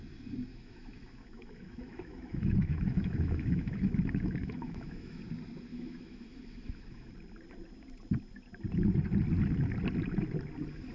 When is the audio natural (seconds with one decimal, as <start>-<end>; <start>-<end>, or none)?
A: 0.0-0.5; 5.2-5.7; 7.1-10.9